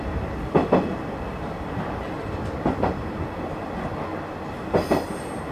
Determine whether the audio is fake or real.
real